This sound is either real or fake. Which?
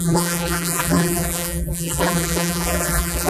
fake